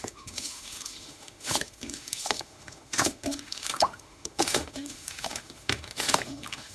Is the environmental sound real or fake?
fake